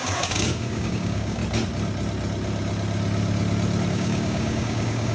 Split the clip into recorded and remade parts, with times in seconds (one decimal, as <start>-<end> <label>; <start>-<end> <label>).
0.0-1.4 remade; 1.4-3.9 recorded; 3.9-5.1 remade